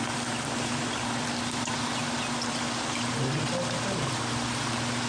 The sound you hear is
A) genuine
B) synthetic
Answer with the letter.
A